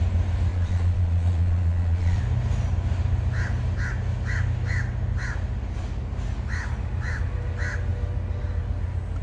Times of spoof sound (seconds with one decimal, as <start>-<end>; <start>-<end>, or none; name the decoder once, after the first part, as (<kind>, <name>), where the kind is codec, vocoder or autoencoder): 0.5-2.2 (vocoder, Vocos)